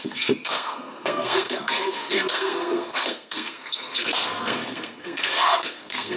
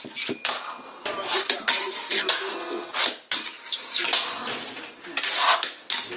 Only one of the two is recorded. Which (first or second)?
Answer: second